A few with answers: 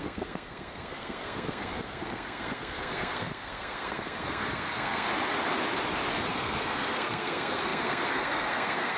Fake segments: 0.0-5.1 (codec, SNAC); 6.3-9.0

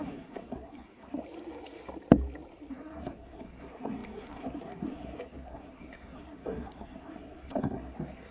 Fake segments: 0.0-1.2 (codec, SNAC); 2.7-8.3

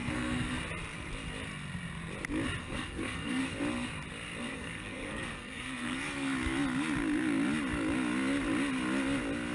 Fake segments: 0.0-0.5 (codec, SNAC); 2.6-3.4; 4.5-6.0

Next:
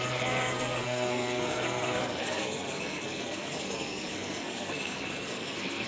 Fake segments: 0.0-5.9 (codec, SNAC)

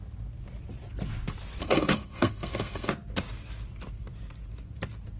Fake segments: 1.6-2.9 (codec, SNAC)

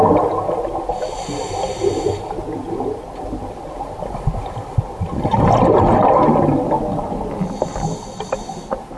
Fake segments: none

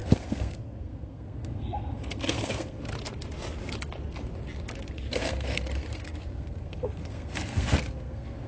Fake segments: 0.0-2.9 (codec, SNAC); 4.9-8.5